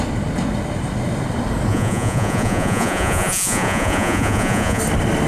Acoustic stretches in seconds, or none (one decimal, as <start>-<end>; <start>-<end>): 0.0-1.7; 4.8-5.3